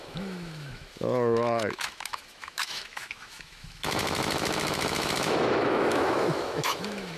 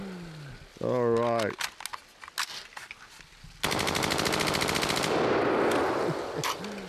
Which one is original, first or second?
second